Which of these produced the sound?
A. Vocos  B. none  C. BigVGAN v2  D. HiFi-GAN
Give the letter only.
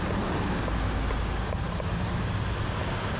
B